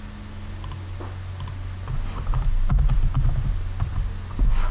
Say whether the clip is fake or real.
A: real